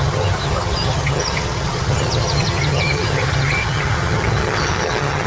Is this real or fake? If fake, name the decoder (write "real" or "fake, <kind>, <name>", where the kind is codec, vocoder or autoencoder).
fake, vocoder, HiFi-GAN